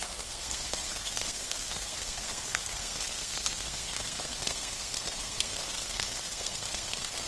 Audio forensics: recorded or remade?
remade